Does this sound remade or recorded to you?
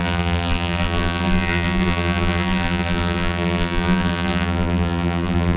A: remade